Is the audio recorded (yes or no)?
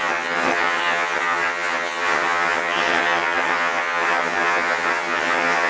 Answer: no